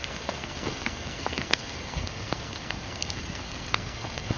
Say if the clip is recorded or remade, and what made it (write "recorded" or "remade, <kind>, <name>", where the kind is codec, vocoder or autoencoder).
remade, codec, SNAC